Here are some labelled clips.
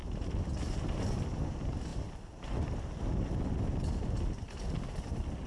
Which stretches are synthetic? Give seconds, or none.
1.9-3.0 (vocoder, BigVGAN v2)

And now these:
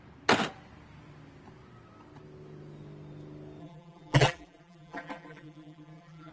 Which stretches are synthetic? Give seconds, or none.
3.6-6.3 (vocoder, BigVGAN v2)

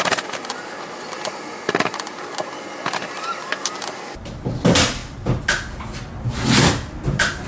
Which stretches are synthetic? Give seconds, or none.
none

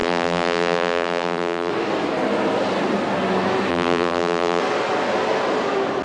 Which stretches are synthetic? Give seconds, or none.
0.0-1.7 (vocoder, BigVGAN v2); 3.7-4.6

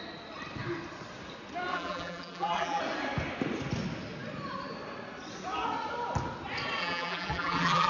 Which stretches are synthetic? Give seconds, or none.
1.7-2.8 (vocoder, BigVGAN v2); 6.8-7.9

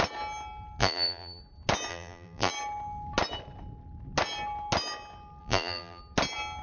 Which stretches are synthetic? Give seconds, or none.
0.8-1.4 (vocoder, BigVGAN v2); 1.9-2.5; 5.4-6.0